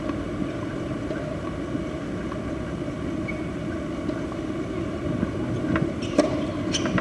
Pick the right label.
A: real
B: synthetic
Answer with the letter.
A